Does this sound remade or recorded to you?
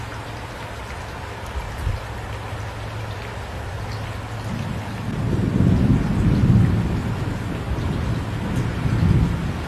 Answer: recorded